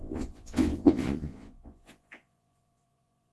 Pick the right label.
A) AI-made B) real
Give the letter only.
A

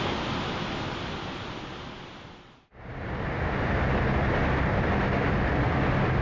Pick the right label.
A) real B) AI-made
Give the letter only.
A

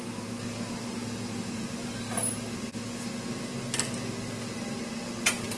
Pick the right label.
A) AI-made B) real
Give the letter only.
B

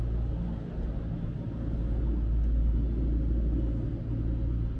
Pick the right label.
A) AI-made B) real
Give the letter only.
B